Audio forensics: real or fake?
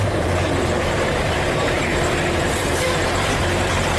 fake